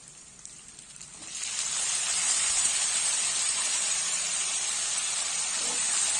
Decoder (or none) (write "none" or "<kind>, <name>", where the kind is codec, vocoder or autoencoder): vocoder, BigVGAN v2